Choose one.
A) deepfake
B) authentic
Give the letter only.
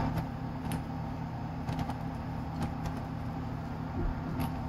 B